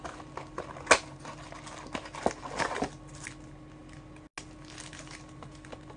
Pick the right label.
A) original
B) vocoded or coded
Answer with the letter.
A